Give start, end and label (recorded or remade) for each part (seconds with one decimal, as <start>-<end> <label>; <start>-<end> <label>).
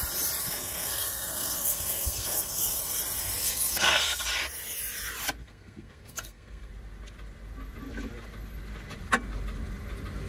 0.0-0.4 recorded; 0.4-3.0 remade; 3.0-3.4 recorded; 3.4-4.2 remade; 4.2-5.4 recorded; 5.4-6.7 remade; 6.7-10.3 recorded